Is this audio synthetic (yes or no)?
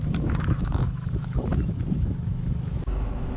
yes